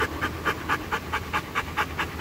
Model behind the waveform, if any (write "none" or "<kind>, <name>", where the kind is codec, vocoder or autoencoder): none